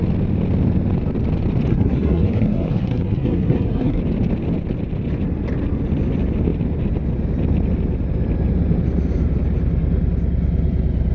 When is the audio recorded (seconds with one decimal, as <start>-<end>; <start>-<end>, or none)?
0.0-1.7; 4.0-11.1